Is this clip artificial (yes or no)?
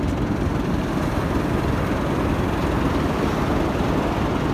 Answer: no